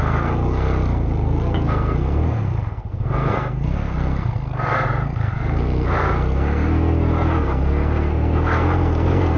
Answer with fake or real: fake